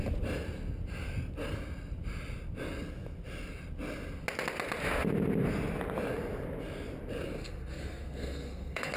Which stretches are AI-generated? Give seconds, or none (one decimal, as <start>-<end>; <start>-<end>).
7.4-9.0